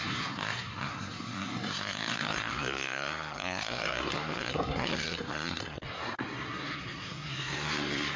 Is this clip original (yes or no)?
no